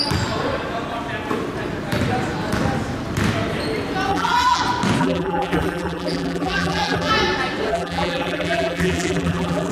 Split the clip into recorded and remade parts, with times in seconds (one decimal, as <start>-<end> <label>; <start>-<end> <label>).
0.0-4.1 recorded; 4.1-4.6 remade; 4.6-5.0 recorded; 5.0-7.1 remade; 7.1-7.7 recorded; 7.7-9.7 remade